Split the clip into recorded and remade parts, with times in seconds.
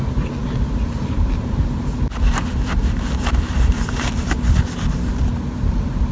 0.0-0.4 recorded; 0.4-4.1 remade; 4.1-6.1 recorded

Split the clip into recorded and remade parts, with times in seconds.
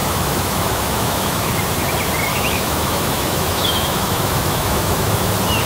0.0-1.6 remade; 1.6-2.3 recorded; 2.3-5.3 remade; 5.3-5.7 recorded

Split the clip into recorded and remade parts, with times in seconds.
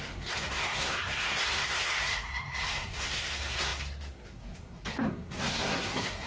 0.0-6.3 remade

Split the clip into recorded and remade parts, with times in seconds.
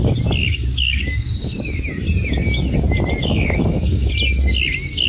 0.0-0.4 recorded; 0.4-1.8 remade; 1.8-3.2 recorded; 3.2-4.1 remade; 4.1-5.1 recorded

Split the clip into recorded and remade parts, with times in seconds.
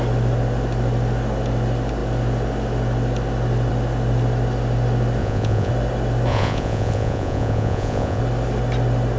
0.0-5.2 recorded; 5.2-5.7 remade; 5.7-6.3 recorded; 6.3-8.2 remade; 8.2-9.2 recorded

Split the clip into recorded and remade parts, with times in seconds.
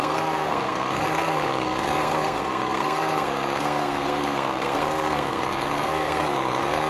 0.0-6.9 remade